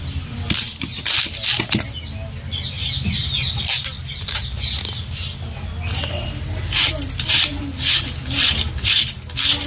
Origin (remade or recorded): recorded